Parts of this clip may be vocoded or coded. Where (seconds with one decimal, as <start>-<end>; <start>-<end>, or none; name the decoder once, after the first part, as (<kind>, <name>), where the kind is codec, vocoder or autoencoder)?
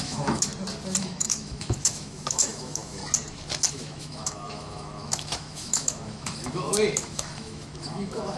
0.0-0.5 (autoencoder, DAC-VAE); 1.0-3.0; 3.7-8.4